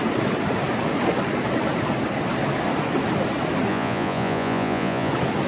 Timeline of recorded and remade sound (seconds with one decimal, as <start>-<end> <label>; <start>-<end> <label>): 0.0-3.7 recorded; 3.7-5.1 remade; 5.1-5.5 recorded